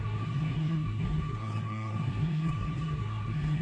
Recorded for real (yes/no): no